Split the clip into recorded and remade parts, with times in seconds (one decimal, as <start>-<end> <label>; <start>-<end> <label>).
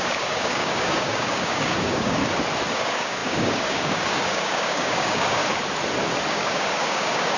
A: 0.0-2.2 remade; 2.2-2.7 recorded; 2.7-5.4 remade; 5.4-6.3 recorded; 6.3-7.4 remade